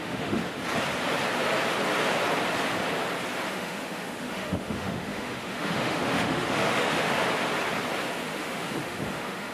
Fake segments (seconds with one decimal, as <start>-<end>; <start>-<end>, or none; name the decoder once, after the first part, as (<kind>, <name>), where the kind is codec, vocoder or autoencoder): 0.0-0.4 (autoencoder, DAC-VAE); 3.5-7.2; 8.2-9.5